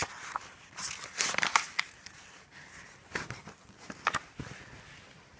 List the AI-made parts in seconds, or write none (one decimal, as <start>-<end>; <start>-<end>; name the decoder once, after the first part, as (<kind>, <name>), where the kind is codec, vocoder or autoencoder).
none